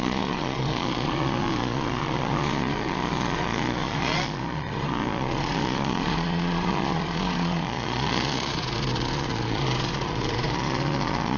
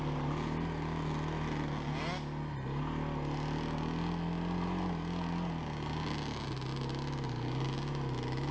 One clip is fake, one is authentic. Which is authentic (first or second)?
second